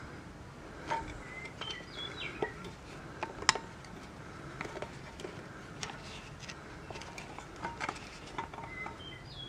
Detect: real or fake real